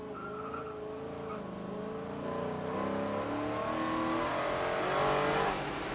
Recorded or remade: recorded